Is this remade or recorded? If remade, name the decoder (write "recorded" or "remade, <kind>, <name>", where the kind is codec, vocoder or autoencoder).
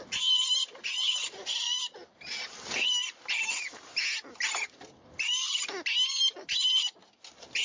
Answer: recorded